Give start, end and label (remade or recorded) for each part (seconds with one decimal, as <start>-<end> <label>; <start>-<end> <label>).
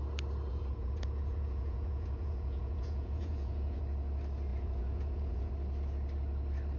0.0-0.5 recorded; 0.5-3.8 remade; 3.8-4.5 recorded; 4.5-5.5 remade; 5.5-6.8 recorded